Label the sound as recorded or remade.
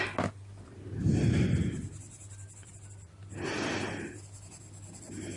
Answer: recorded